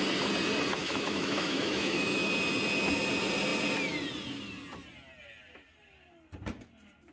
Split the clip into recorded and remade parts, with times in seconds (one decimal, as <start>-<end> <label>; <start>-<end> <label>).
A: 0.0-0.8 recorded; 0.8-2.3 remade; 2.3-7.1 recorded